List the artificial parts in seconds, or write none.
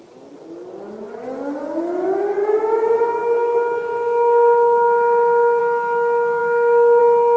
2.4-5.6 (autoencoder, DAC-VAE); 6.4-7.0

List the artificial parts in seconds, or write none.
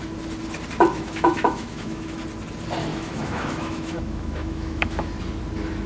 0.9-2.2 (autoencoder, DAC-VAE); 2.9-5.1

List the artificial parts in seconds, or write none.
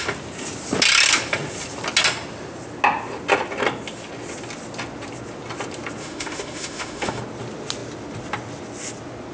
6.0-7.2 (autoencoder, DAC-VAE)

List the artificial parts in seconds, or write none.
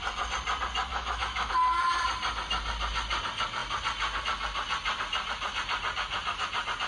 0.9-1.5 (autoencoder, DAC-VAE)